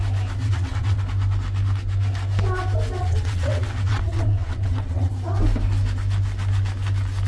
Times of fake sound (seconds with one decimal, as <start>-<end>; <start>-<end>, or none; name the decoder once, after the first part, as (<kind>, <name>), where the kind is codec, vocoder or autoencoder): 0.4-1.0 (vocoder, WaveNeXt); 3.0-5.1